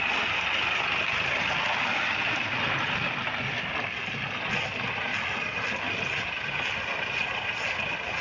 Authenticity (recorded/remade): recorded